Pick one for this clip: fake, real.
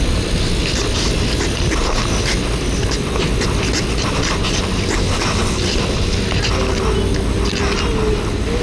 real